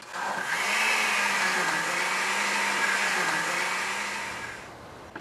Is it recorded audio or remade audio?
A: recorded